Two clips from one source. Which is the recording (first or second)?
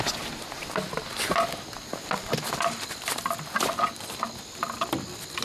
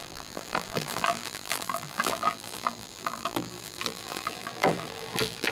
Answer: first